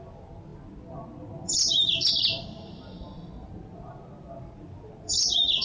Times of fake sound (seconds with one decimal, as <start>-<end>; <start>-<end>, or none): none